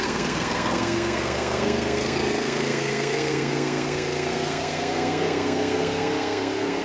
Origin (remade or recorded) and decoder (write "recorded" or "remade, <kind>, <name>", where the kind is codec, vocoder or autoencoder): remade, codec, SNAC